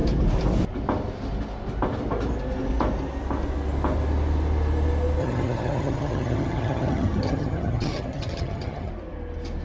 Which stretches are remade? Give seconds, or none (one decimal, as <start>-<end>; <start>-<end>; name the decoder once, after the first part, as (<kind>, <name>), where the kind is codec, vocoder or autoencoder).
5.2-8.9 (vocoder, HiFi-GAN)